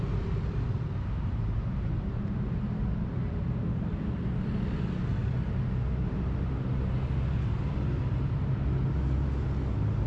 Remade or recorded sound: recorded